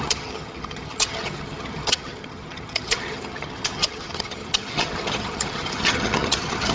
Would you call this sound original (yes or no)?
no